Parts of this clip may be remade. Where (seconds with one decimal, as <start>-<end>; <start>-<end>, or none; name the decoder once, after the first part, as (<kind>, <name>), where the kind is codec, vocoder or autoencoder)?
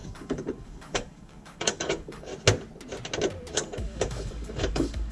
0.0-2.3 (codec, DAC); 3.5-5.1